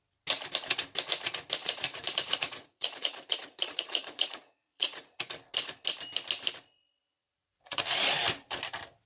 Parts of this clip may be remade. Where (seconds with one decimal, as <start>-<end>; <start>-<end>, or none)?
1.6-5.2; 7.0-7.8